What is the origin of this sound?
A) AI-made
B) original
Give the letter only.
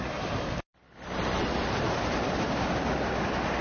B